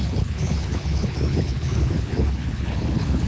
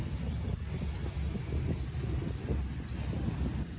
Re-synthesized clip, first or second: first